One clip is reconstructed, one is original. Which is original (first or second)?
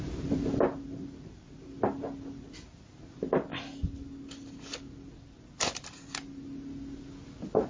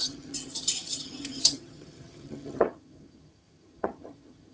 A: first